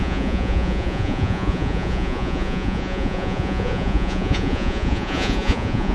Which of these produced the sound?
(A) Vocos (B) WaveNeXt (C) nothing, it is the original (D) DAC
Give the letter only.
A